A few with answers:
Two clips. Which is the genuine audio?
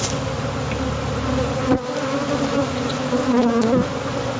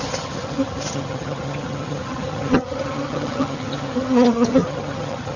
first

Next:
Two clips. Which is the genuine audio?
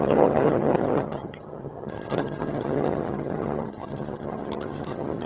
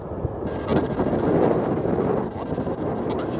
second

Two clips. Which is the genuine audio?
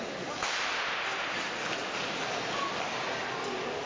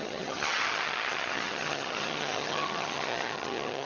first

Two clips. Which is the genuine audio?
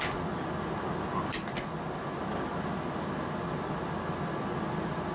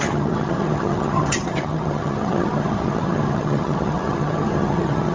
first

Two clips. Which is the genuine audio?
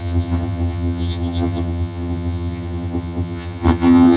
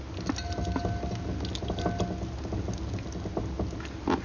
second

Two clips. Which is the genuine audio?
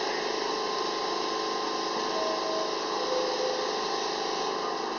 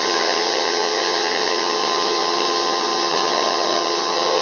first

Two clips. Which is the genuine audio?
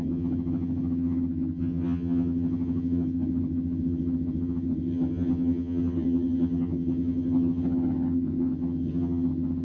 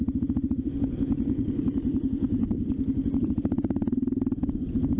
second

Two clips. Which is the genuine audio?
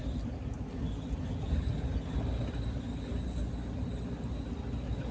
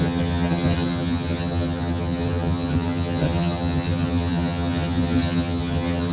first